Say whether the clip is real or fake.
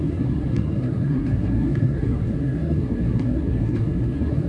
fake